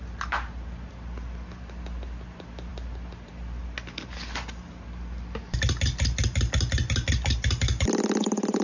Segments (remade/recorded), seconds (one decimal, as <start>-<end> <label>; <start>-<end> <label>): 0.0-8.6 recorded